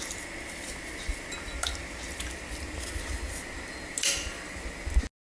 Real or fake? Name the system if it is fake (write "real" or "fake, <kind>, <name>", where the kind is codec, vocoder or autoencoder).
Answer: real